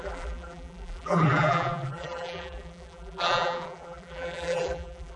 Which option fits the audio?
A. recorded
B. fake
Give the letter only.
B